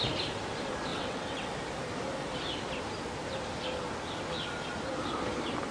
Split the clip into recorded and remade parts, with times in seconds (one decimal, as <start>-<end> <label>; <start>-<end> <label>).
0.0-0.9 recorded; 0.9-1.5 remade; 1.5-5.7 recorded